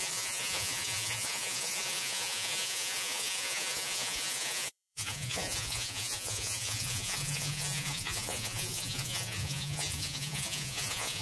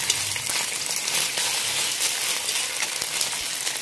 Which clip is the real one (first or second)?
second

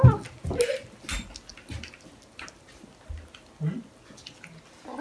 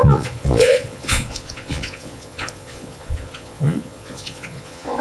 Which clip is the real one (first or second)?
first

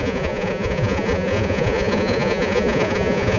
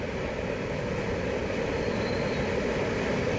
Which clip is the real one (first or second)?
second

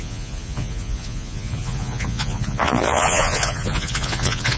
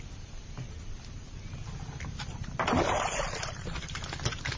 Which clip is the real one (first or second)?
second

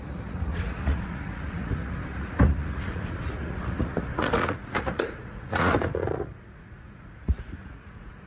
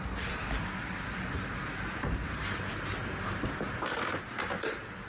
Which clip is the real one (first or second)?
second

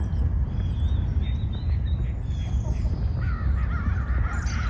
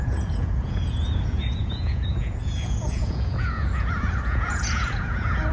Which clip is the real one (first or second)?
first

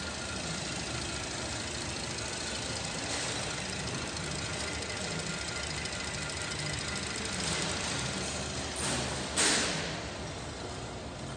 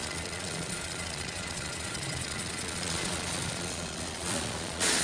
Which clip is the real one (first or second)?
first